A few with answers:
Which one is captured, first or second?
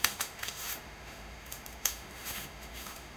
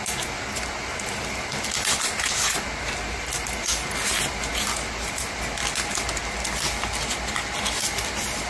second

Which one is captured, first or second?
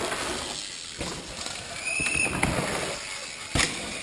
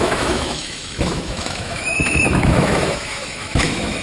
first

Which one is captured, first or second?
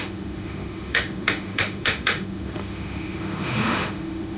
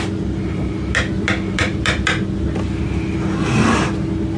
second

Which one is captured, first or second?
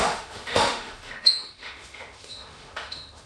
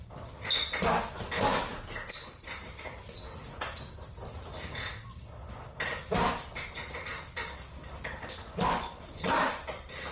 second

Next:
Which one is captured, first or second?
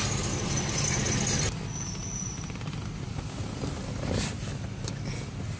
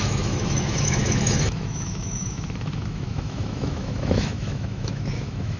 first